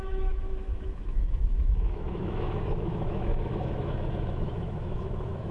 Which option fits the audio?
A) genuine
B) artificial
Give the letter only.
B